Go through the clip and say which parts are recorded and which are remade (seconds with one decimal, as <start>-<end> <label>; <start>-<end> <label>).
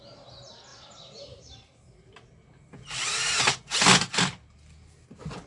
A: 0.0-0.7 recorded; 0.7-3.4 remade; 3.4-5.5 recorded